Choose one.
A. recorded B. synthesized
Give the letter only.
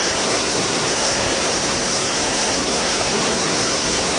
B